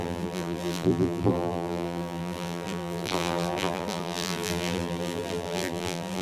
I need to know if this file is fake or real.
fake